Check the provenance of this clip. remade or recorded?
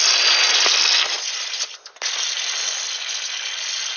recorded